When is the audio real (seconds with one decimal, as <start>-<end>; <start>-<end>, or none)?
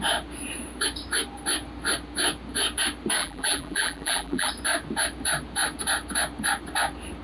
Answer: 0.0-3.2; 4.5-7.2